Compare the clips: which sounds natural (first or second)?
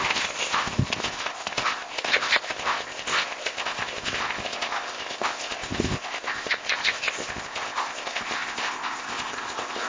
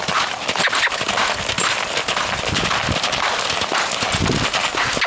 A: second